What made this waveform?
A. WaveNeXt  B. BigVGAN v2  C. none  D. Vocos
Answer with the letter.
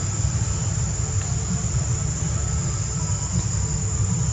C